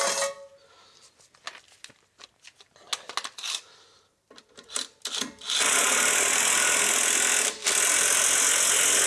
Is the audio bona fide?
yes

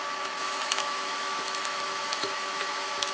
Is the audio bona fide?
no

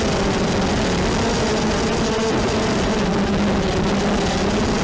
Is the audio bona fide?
yes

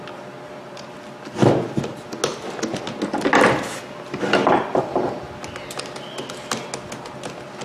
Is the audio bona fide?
yes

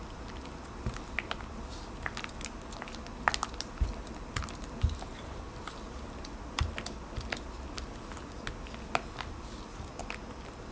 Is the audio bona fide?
yes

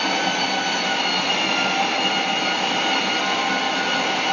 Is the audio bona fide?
yes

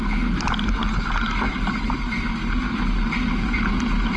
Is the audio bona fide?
yes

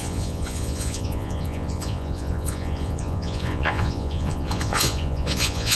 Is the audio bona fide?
no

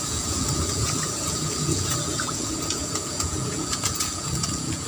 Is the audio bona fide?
no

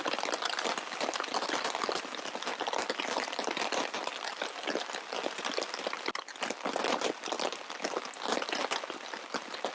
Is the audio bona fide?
yes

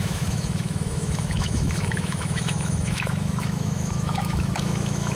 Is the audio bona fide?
no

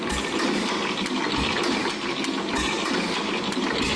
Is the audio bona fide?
yes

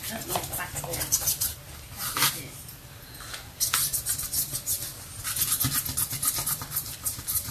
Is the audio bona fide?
yes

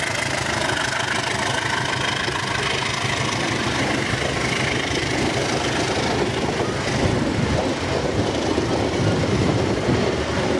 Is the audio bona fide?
yes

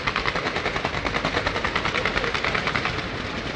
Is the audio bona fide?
yes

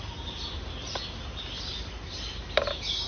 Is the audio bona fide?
yes